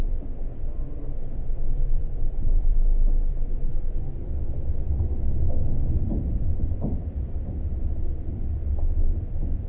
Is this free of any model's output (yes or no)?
yes